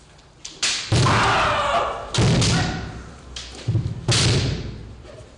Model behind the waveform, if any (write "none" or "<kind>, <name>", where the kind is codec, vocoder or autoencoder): none